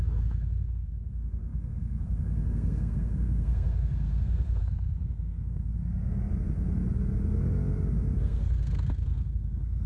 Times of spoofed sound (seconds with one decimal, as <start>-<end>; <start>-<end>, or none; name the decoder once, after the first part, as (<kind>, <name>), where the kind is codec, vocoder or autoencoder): 0.0-5.7 (codec, SNAC); 8.2-9.9